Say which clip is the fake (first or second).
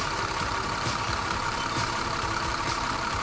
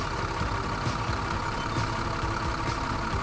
first